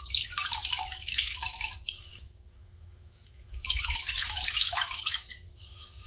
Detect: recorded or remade remade